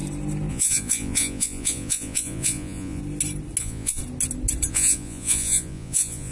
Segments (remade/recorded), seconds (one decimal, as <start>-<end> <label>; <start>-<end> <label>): 0.0-0.5 recorded; 0.5-3.0 remade; 3.0-3.6 recorded; 3.6-4.0 remade; 4.0-4.7 recorded; 4.7-6.3 remade

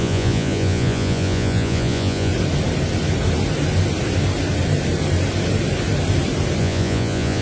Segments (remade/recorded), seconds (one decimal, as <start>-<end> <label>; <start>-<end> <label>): 0.0-2.3 remade; 2.3-6.6 recorded; 6.6-7.4 remade